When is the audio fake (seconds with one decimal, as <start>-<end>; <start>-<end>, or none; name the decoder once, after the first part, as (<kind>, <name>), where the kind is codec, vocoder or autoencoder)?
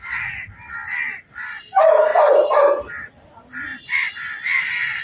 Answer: 0.0-5.0 (vocoder, BigVGAN v2)